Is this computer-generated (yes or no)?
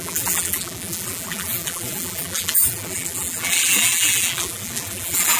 yes